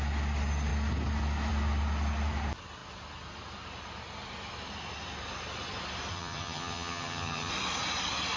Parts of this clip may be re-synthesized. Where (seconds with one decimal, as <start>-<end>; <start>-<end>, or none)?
6.1-7.5